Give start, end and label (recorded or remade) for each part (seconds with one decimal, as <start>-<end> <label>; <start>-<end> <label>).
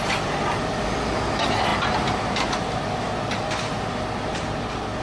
0.0-5.0 recorded